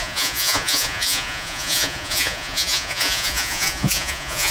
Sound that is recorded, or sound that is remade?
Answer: remade